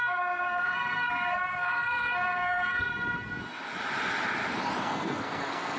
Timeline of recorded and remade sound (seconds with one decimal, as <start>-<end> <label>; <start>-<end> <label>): 0.0-2.9 remade; 2.9-4.8 recorded; 4.8-5.8 remade